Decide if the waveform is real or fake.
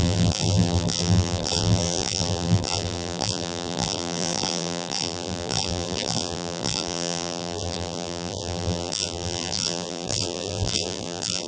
fake